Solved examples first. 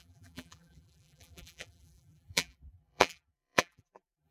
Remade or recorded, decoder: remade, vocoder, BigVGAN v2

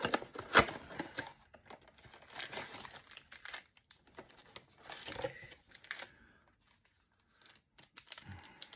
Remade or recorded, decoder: recorded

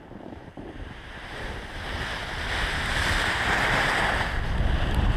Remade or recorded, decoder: remade, vocoder, BigVGAN v2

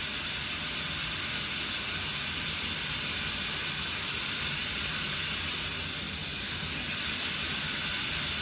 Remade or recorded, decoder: recorded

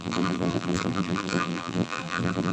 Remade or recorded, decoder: remade, vocoder, BigVGAN v2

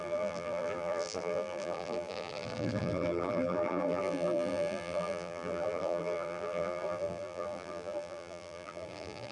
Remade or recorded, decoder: remade, vocoder, BigVGAN v2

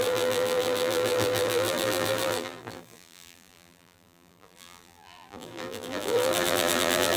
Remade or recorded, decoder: remade, vocoder, BigVGAN v2